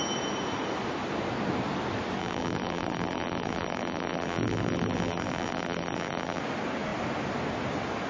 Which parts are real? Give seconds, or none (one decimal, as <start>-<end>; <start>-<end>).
0.0-2.2; 6.4-8.1